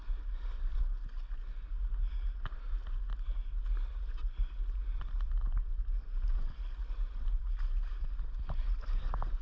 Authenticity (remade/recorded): recorded